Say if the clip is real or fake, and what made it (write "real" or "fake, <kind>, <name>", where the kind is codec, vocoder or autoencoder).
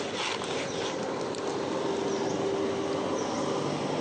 real